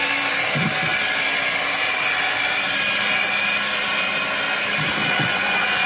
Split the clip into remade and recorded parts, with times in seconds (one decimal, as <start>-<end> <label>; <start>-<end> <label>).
0.0-5.3 recorded; 5.3-5.9 remade